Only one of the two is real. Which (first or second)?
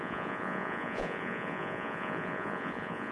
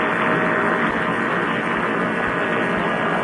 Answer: second